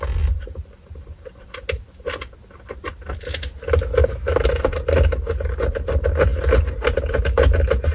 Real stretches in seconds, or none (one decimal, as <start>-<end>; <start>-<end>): 0.0-7.9